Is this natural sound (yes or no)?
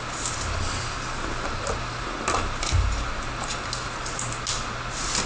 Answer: yes